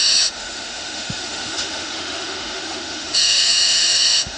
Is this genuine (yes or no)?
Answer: no